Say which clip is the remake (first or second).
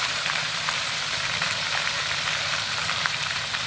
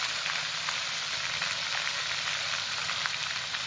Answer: first